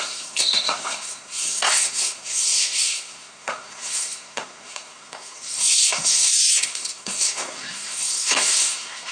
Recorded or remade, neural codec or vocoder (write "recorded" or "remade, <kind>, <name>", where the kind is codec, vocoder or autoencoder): remade, codec, SNAC